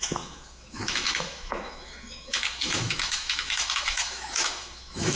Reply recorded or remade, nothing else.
remade